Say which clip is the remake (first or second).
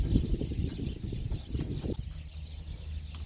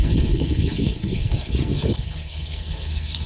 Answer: second